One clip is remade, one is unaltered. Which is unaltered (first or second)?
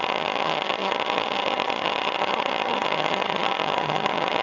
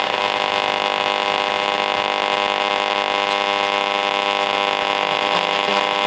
second